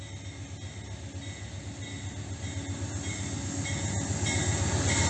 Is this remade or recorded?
recorded